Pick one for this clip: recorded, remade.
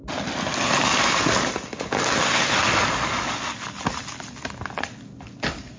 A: recorded